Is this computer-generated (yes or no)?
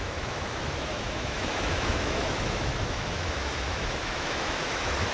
yes